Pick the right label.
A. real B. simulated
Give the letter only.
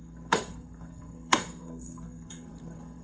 B